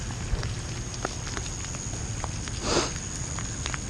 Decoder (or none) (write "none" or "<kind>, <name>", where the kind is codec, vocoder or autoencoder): none